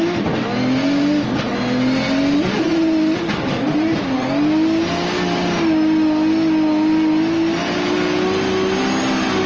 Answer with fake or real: real